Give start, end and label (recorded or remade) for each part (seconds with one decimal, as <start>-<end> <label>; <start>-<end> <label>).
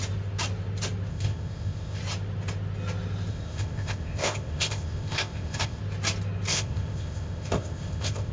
0.0-1.1 recorded; 1.1-2.0 remade; 2.0-3.3 recorded; 3.3-5.8 remade; 5.8-6.5 recorded; 6.5-8.3 remade